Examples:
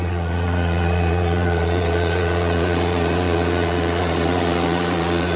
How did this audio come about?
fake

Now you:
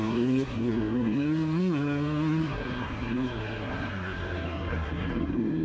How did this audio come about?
fake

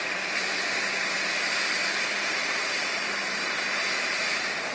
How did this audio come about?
fake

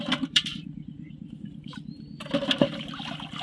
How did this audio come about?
fake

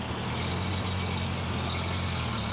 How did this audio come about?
real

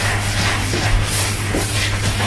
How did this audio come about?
real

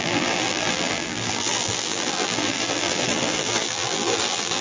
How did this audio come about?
fake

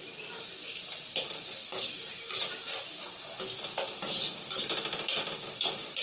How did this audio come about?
real